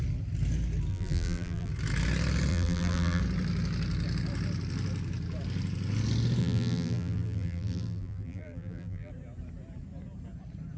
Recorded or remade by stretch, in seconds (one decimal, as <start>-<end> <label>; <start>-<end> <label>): 0.0-0.9 recorded; 0.9-1.7 remade; 1.7-2.5 recorded; 2.5-3.2 remade; 3.2-6.4 recorded; 6.4-9.1 remade; 9.1-10.8 recorded